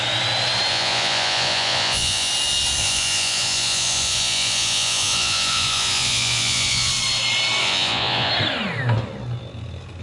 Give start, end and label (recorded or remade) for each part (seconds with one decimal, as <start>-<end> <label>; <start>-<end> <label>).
0.0-0.7 recorded; 0.7-2.3 remade; 2.3-2.8 recorded; 2.8-6.9 remade; 6.9-7.6 recorded; 7.6-8.3 remade; 8.3-10.0 recorded